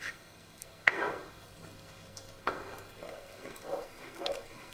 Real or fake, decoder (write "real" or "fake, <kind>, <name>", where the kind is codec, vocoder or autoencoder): fake, codec, SNAC